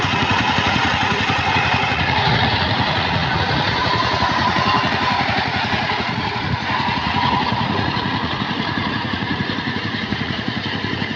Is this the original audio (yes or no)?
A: no